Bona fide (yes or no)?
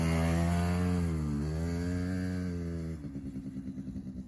yes